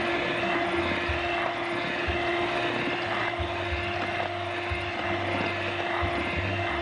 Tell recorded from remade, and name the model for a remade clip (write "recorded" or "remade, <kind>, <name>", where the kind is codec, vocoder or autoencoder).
recorded